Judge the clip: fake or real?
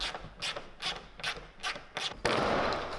real